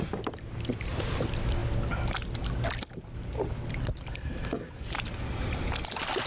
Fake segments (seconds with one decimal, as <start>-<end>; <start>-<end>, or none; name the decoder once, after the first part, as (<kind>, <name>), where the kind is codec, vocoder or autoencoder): none